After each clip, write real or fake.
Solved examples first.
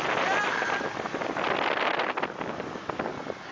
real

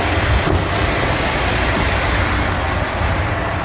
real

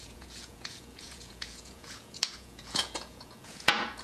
fake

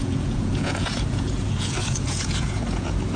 fake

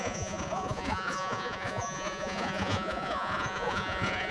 fake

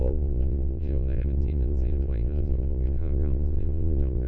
fake